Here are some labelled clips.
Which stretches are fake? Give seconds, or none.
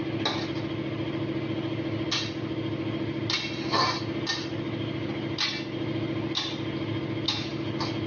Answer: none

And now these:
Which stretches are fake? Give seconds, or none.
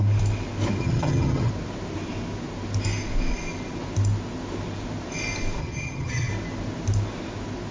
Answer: 0.8-1.5 (vocoder, HiFi-GAN); 5.6-6.3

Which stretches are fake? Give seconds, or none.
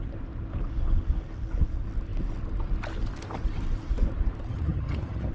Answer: 4.5-5.3 (vocoder, HiFi-GAN)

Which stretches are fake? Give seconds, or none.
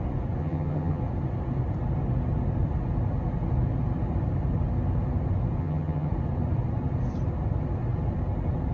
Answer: 0.4-1.0 (vocoder, HiFi-GAN); 5.6-6.1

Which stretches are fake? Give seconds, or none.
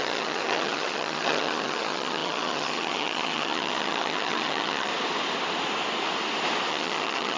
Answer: 0.0-4.9 (vocoder, HiFi-GAN); 6.7-7.4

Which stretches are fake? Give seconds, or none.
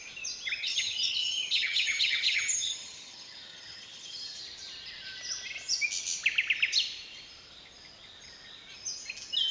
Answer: 0.6-4.4 (vocoder, HiFi-GAN)